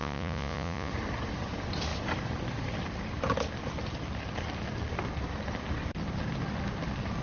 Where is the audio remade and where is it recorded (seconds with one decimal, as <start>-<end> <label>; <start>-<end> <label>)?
0.0-0.9 remade; 0.9-7.2 recorded